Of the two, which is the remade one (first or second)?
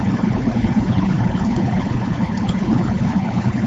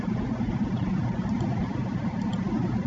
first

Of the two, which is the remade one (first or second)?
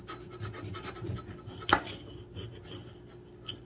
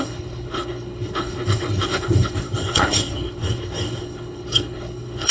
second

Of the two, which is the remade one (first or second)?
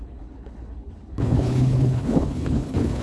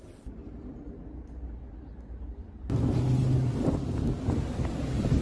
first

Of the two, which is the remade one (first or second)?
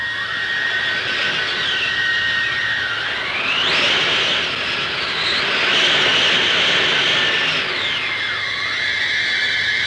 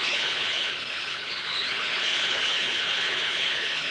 second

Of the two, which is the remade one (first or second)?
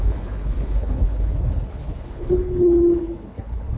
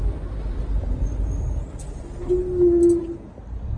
first